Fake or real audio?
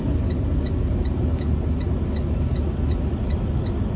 real